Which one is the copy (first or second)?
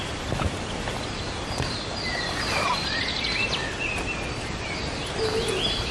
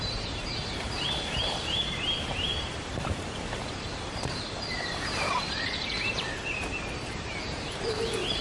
second